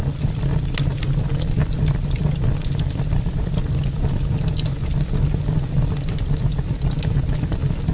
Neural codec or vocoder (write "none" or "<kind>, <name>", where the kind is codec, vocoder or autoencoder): none